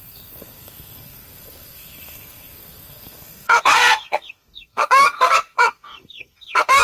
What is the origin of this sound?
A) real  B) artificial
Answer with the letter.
B